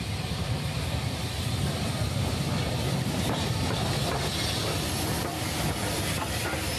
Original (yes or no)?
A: yes